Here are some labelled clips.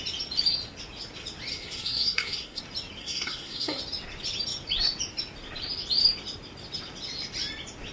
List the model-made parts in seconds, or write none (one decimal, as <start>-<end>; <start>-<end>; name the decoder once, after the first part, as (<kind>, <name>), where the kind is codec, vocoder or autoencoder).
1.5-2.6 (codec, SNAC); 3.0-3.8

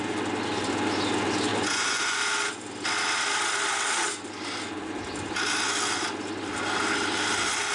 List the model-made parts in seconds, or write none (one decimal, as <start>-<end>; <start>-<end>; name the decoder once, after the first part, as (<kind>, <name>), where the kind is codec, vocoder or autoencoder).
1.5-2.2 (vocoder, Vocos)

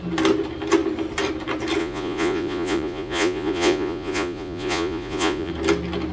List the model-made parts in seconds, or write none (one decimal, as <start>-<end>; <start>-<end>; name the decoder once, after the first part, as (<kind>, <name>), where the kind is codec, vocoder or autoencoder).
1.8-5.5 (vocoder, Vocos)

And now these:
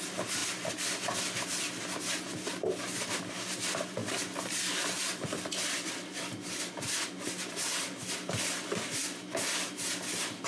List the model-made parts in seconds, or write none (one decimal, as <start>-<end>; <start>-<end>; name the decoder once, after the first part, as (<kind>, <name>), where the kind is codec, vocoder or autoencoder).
none

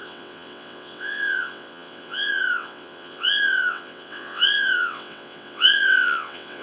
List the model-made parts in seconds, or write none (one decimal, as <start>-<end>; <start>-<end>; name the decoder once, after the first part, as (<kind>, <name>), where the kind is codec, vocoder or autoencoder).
0.0-6.6 (vocoder, WaveNeXt)

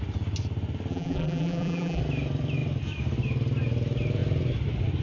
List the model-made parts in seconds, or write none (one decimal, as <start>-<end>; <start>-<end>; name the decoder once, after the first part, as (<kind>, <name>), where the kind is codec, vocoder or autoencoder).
0.9-2.0 (vocoder, BigVGAN v2)